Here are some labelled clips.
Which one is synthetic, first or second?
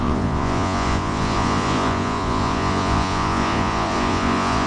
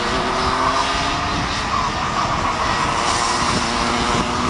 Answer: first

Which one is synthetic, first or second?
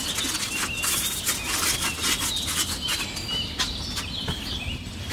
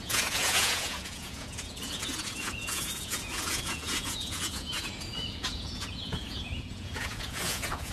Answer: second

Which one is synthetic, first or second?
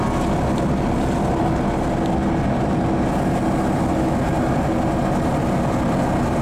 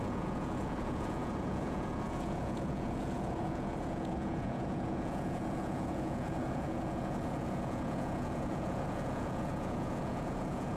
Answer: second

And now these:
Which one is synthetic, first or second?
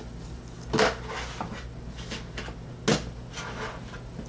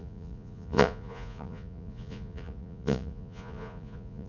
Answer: second